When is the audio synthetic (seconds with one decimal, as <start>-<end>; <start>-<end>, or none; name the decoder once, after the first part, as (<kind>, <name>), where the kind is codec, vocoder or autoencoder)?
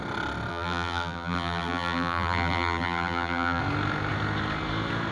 0.5-3.6 (vocoder, BigVGAN v2)